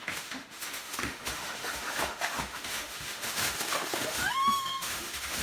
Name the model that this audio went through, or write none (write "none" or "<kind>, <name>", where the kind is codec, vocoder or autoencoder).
autoencoder, DAC-VAE